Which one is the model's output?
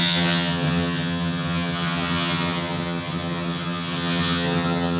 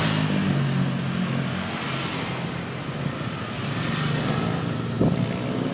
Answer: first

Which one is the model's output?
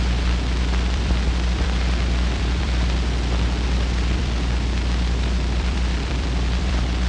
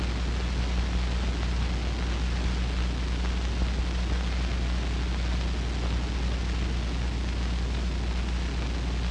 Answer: first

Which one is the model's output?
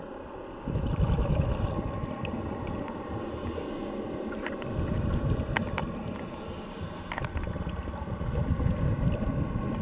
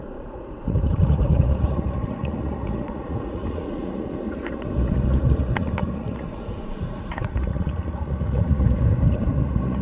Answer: second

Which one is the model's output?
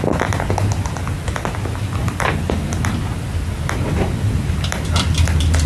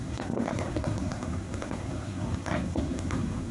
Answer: second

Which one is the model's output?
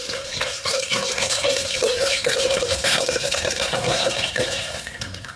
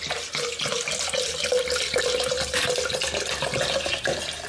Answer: first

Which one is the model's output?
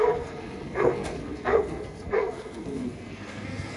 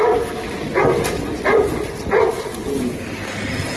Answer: first